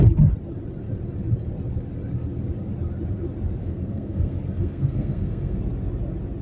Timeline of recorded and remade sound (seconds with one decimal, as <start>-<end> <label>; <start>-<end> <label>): 0.0-3.6 recorded; 3.6-5.6 remade; 5.6-6.4 recorded